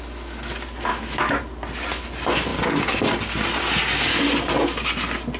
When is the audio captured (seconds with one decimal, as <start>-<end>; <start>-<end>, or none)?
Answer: 0.0-0.9; 1.4-5.4